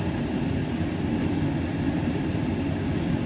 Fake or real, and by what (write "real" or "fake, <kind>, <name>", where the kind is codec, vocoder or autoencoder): real